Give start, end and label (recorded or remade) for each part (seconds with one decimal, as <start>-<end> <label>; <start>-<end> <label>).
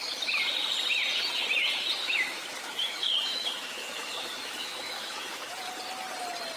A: 0.0-2.0 recorded; 2.0-5.6 remade; 5.6-6.6 recorded